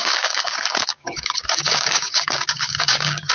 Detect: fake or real fake